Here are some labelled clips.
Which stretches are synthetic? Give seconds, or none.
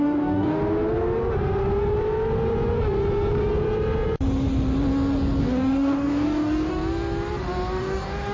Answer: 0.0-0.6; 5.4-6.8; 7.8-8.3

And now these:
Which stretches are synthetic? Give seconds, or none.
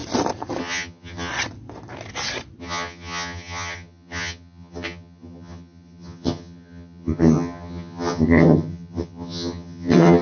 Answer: 0.6-1.3; 2.6-10.2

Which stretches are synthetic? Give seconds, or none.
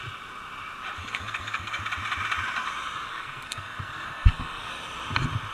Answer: 1.0-1.8; 3.1-4.7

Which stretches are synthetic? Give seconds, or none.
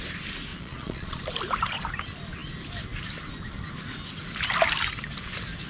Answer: 0.5-1.2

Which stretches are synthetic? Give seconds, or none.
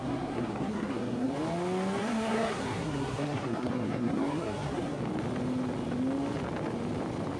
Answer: 0.0-1.3; 2.0-5.0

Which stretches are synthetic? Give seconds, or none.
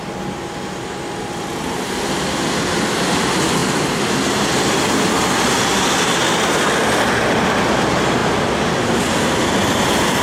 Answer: none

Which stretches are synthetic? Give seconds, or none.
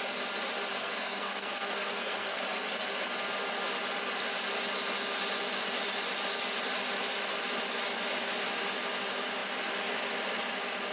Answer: 0.7-2.4